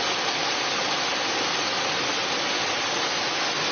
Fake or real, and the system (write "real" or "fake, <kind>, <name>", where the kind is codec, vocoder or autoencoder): real